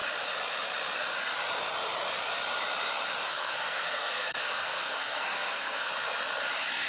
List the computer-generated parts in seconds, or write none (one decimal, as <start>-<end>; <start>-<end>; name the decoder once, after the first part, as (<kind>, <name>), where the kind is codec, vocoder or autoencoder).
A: 3.2-5.9 (codec, SNAC)